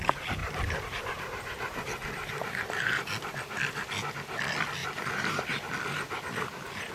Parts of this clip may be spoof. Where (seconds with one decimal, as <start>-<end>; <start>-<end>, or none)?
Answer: 0.4-3.0; 4.8-5.7